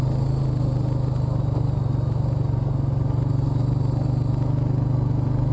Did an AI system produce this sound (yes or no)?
no